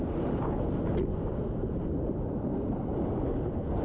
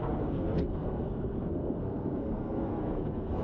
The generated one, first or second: second